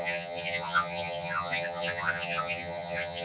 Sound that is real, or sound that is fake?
fake